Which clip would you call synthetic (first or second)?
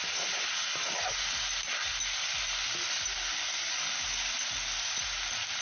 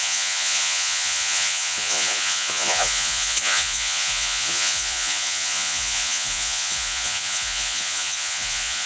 second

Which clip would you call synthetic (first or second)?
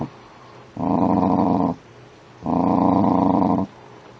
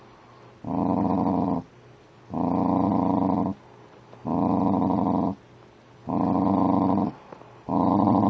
first